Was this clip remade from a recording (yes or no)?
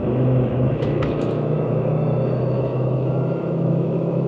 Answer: yes